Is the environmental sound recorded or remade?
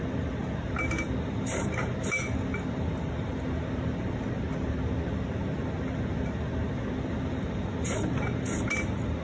recorded